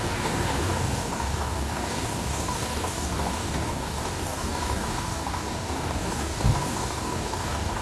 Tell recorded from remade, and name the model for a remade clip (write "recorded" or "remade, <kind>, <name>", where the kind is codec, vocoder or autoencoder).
remade, codec, DAC